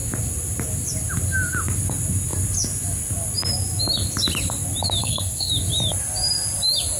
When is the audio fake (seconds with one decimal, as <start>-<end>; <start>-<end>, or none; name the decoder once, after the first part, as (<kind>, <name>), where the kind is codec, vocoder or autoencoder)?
5.0-5.5 (codec, SNAC)